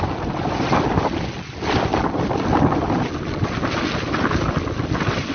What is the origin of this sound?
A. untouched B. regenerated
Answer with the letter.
A